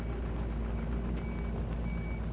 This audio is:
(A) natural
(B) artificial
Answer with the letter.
A